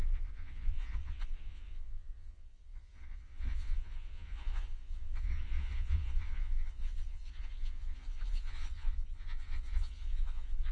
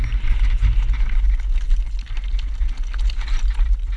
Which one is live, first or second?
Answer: second